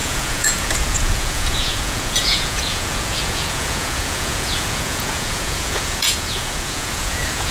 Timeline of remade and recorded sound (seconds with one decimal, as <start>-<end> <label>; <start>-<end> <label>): 0.0-7.5 remade